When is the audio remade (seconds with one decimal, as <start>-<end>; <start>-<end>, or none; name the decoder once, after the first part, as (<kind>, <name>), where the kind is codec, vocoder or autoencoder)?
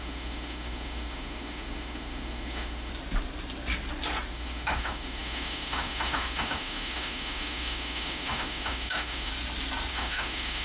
0.0-2.9 (autoencoder, DAC-VAE); 4.3-9.3; 9.9-10.6